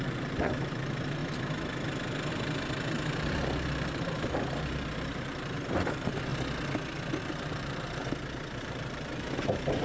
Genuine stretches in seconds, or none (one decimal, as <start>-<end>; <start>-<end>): 1.2-2.3; 6.3-7.2; 8.0-8.6